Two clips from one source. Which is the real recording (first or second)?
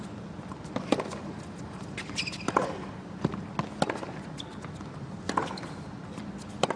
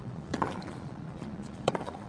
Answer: first